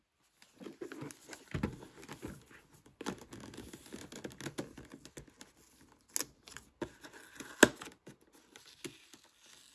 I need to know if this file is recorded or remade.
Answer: recorded